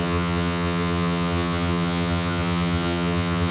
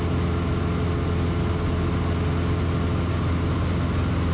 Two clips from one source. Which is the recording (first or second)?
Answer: second